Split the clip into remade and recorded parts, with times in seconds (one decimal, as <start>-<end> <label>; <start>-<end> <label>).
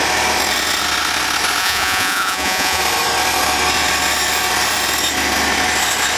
0.0-1.6 recorded; 1.6-2.8 remade; 2.8-6.2 recorded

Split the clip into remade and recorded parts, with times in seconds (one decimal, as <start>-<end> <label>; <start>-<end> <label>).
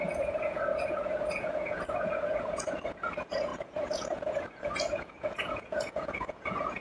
0.0-6.8 remade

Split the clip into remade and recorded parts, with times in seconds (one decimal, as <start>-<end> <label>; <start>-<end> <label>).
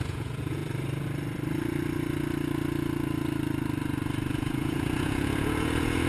0.0-0.6 remade; 0.6-4.3 recorded; 4.3-6.1 remade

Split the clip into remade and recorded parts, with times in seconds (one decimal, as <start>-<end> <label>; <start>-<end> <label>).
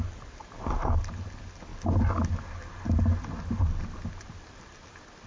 0.0-5.3 recorded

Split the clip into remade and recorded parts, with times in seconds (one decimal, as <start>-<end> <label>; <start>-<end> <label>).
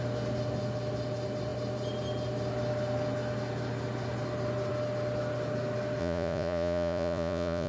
0.0-6.0 recorded; 6.0-7.7 remade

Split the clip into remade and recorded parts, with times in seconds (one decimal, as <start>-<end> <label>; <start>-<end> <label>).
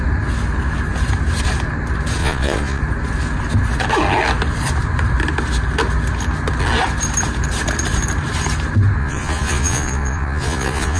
0.0-2.2 recorded; 2.2-2.8 remade; 2.8-9.0 recorded; 9.0-11.0 remade